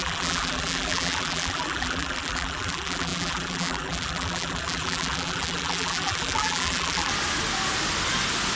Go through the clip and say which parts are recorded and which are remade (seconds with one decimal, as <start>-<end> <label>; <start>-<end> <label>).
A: 0.0-7.1 remade; 7.1-8.6 recorded